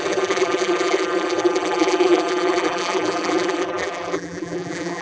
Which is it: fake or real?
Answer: fake